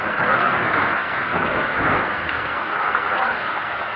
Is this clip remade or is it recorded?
remade